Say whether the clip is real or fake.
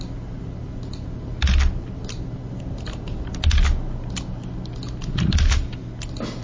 real